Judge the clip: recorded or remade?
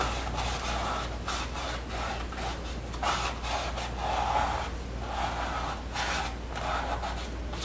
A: recorded